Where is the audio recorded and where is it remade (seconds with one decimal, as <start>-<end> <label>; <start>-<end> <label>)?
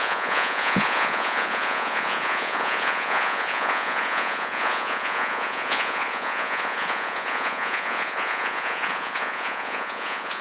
0.0-10.4 remade